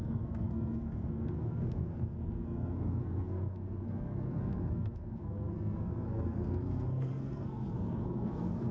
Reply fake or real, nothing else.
fake